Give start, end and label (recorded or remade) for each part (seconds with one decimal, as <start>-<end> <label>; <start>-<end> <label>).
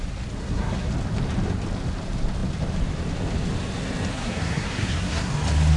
0.0-0.4 recorded; 0.4-0.9 remade; 0.9-4.1 recorded; 4.1-5.3 remade; 5.3-5.8 recorded